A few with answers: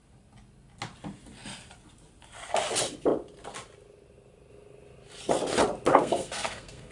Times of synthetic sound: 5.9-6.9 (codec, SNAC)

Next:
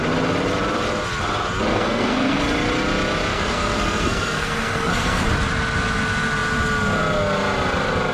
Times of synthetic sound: 1.7-2.4 (codec, SNAC); 3.3-5.3

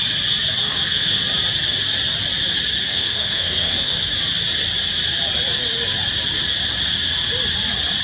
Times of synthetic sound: 0.6-1.2 (codec, SNAC); 2.8-4.0